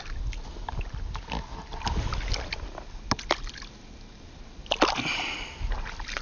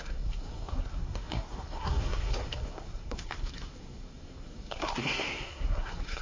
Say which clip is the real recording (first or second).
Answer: first